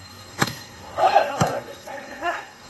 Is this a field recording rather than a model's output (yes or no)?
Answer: no